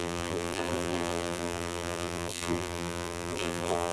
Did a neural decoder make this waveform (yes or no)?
yes